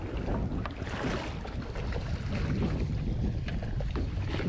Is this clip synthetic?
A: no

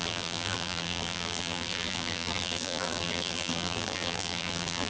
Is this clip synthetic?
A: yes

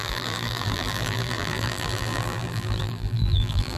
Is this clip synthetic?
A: yes